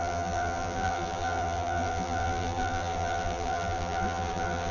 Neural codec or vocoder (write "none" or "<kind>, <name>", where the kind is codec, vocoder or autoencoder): vocoder, BigVGAN v2